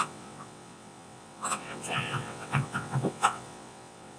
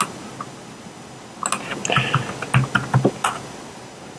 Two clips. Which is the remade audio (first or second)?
first